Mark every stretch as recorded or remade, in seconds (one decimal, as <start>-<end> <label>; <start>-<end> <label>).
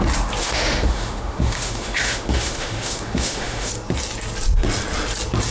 0.0-0.4 recorded; 0.4-3.7 remade; 3.7-5.5 recorded